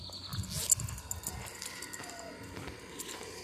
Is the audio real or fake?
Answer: real